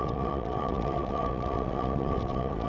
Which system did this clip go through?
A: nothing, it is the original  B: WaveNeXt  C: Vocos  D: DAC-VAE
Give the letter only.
B